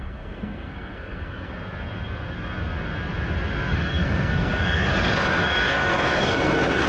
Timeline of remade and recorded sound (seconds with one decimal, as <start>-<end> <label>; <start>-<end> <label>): 0.0-1.5 remade; 1.5-3.7 recorded; 3.7-6.9 remade